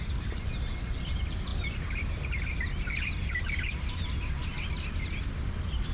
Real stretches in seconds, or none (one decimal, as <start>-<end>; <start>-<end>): 0.0-5.9